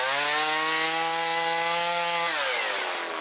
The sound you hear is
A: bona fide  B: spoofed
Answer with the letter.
A